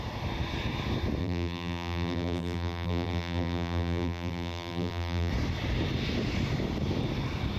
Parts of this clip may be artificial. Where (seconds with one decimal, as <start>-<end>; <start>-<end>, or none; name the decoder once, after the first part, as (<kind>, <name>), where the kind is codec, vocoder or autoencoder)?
1.2-5.3 (vocoder, BigVGAN v2)